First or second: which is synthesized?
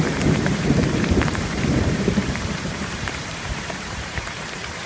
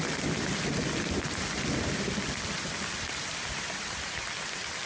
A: first